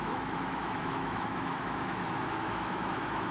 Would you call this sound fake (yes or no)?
yes